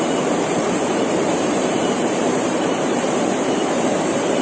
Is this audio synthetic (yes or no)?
yes